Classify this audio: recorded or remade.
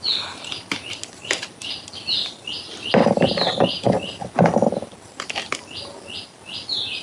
recorded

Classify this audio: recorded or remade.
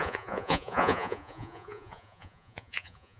remade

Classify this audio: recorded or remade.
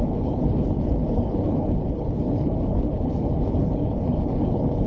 remade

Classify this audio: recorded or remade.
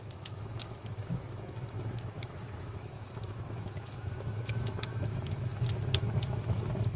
remade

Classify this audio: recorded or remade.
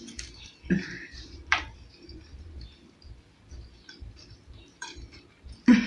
remade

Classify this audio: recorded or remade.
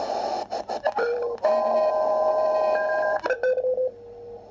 recorded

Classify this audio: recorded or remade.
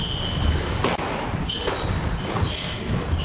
recorded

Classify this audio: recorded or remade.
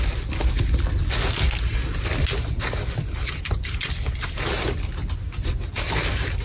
recorded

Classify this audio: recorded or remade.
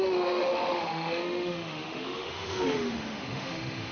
remade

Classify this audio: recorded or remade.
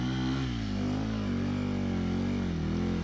recorded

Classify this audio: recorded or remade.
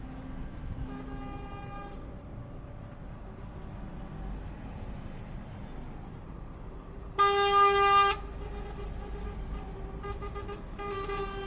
recorded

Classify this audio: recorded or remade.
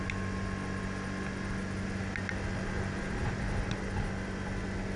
recorded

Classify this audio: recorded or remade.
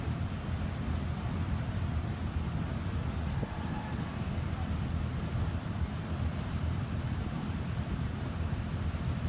remade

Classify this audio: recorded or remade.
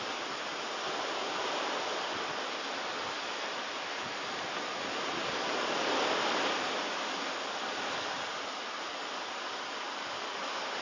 recorded